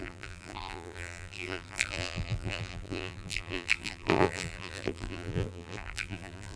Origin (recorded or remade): remade